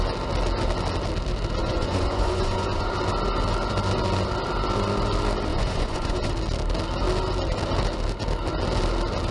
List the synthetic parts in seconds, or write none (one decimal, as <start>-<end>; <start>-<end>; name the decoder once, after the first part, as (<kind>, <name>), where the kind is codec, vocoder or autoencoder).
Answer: 1.6-2.9 (vocoder, Vocos); 5.5-6.3

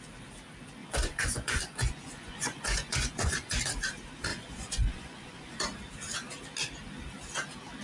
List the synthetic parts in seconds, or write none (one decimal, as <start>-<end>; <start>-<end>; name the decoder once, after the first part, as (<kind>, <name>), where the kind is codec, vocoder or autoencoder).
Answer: 0.8-3.6 (vocoder, Vocos); 4.3-5.6

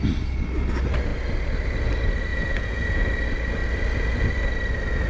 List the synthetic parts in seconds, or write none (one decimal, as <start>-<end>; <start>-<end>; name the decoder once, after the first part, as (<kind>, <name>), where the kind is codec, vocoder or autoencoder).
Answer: 2.3-3.0 (vocoder, Vocos)

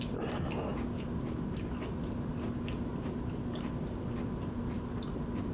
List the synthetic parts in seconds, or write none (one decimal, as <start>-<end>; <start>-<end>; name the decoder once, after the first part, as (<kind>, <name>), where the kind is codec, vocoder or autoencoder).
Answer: none

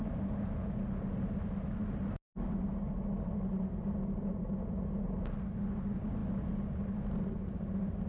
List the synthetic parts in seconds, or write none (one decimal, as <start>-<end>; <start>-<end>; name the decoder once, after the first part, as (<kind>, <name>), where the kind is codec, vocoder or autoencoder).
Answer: none

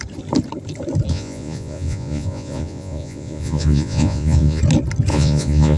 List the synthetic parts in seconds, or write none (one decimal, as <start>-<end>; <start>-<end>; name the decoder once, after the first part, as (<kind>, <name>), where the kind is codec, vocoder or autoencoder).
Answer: 1.1-4.6 (vocoder, Vocos); 5.1-5.8

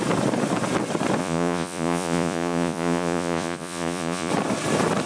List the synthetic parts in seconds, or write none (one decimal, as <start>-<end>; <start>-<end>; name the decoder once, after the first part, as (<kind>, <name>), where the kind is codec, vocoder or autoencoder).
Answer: 1.2-4.3 (vocoder, Vocos)